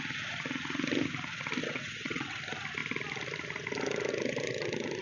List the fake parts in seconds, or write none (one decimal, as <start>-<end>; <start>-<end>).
1.6-2.4